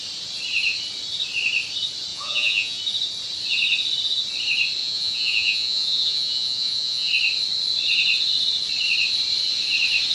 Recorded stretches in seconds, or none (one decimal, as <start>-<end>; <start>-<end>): 0.0-2.1; 2.8-4.8; 7.1-10.1